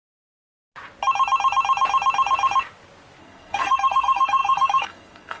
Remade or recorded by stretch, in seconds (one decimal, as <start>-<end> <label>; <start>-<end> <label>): 0.0-3.2 recorded; 3.2-5.4 remade